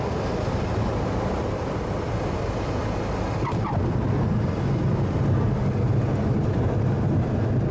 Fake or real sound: real